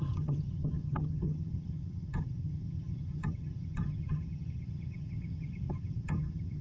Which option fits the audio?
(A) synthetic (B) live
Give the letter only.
A